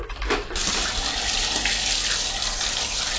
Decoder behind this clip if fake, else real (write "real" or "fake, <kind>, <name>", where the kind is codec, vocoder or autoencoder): real